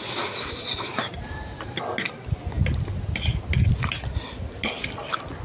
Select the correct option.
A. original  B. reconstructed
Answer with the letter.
A